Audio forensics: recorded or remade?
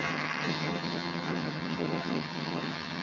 remade